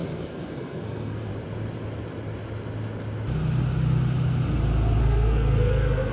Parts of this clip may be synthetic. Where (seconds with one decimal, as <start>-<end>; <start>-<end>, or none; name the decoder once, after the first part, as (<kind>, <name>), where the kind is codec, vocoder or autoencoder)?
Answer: 0.0-1.3 (codec, SNAC); 5.0-6.1